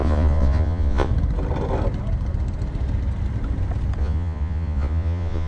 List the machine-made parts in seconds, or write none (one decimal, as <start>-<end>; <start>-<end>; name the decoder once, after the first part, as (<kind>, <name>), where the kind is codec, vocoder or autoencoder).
0.0-1.1 (vocoder, Vocos); 4.0-5.5